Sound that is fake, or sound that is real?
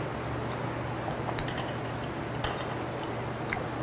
real